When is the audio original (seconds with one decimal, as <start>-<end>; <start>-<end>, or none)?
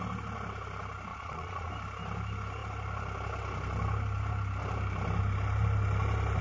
0.0-1.1; 1.7-6.4